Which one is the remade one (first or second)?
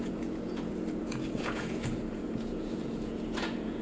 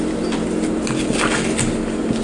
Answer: first